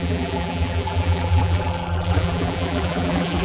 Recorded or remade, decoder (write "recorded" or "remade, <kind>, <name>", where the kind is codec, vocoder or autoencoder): remade, vocoder, BigVGAN v2